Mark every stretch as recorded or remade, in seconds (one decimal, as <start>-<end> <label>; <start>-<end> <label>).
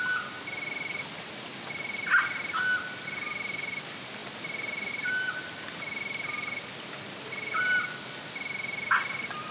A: 0.0-9.5 recorded